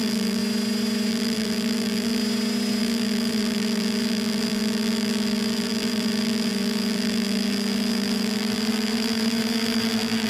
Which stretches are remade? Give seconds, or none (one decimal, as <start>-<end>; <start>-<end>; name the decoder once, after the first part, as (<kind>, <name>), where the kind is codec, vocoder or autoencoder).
0.0-0.4 (vocoder, BigVGAN v2); 1.1-2.2; 2.8-10.3